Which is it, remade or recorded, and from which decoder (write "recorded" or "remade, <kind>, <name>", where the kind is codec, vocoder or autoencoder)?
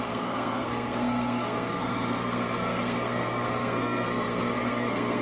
remade, codec, SNAC